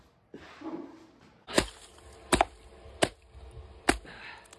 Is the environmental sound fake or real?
real